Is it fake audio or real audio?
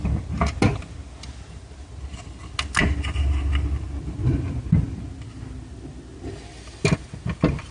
real